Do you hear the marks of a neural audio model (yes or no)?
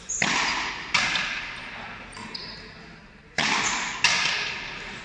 no